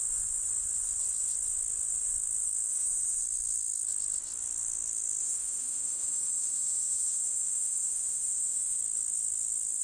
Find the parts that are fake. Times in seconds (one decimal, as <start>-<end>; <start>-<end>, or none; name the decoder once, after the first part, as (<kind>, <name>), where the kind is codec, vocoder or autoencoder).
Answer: 2.7-3.2 (autoencoder, DAC-VAE); 5.2-8.8